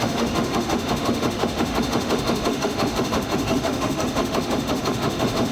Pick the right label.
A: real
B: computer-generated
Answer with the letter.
B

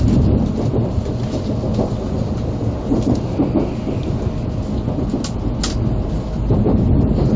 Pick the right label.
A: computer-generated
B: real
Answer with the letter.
B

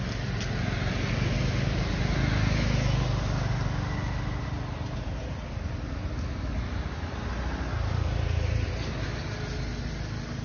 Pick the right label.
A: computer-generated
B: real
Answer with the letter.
B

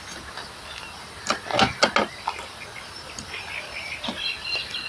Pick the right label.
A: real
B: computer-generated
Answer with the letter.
A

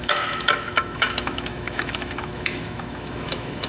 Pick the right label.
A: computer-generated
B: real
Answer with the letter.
A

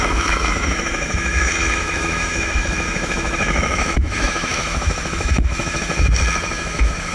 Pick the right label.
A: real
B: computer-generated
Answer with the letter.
B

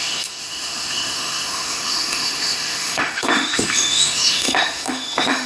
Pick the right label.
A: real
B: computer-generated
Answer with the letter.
B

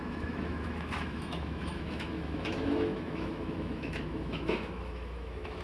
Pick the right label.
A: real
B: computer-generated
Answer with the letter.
B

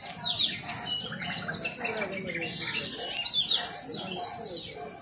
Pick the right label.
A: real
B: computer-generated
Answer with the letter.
A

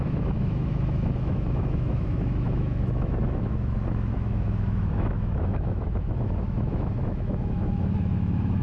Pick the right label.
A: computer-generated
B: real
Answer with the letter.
A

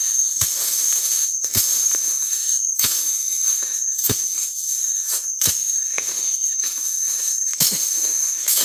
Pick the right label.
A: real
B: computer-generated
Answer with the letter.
B